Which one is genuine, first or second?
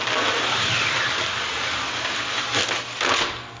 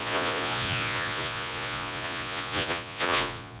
first